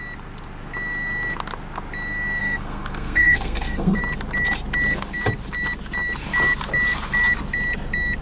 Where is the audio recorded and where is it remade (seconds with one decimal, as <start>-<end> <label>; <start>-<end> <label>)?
0.0-2.4 recorded; 2.4-4.0 remade; 4.0-8.2 recorded